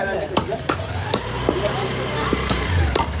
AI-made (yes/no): yes